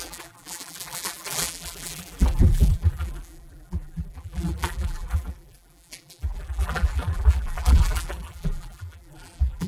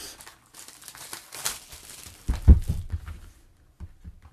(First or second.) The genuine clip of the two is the second